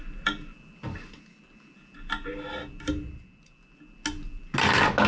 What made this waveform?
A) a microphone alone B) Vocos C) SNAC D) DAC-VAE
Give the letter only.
A